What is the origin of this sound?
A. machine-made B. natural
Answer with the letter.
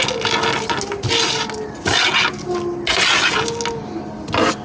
B